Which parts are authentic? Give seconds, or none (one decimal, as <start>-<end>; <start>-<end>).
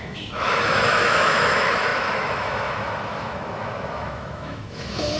none